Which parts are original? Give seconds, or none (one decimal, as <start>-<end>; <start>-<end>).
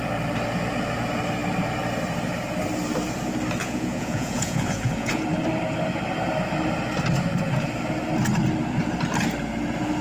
0.0-3.6; 5.2-10.0